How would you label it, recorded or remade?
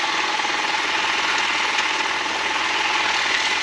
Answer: remade